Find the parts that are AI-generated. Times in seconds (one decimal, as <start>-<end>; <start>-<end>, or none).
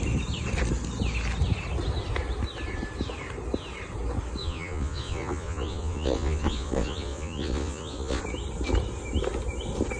4.4-8.2